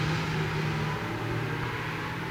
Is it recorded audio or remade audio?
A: recorded